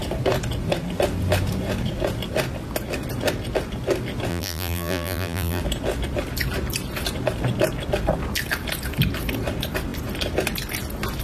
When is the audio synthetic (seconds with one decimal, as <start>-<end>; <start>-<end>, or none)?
4.3-5.6